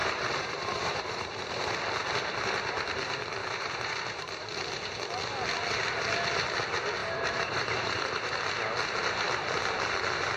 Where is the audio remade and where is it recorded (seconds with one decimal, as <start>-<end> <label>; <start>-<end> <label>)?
0.0-1.6 remade; 1.6-3.4 recorded; 3.4-4.7 remade; 4.7-7.0 recorded; 7.0-8.4 remade; 8.4-10.4 recorded